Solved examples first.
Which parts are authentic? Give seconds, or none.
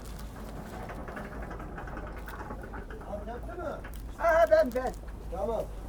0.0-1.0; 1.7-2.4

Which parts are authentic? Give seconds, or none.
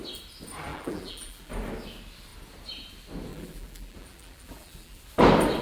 0.0-0.7; 1.5-3.3; 5.0-5.6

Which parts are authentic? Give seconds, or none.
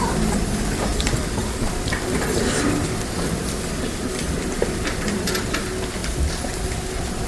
0.0-0.9; 1.9-6.0; 6.5-7.3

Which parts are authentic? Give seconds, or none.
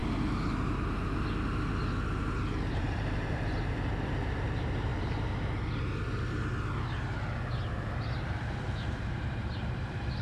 0.0-2.7; 4.9-7.5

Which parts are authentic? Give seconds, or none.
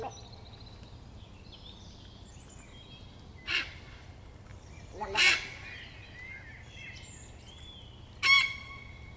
0.0-4.5; 5.2-9.2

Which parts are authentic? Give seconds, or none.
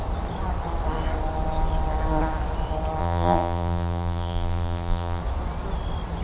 0.0-3.0; 5.2-6.2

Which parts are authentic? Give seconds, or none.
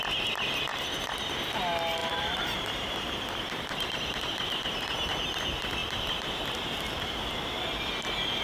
0.0-0.7; 1.3-2.0; 5.1-8.4